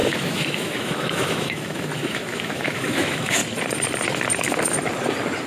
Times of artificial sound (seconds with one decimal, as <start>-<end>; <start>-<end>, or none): 0.0-3.4